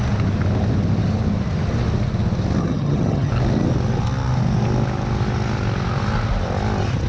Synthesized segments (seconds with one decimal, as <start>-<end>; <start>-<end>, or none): 2.6-3.3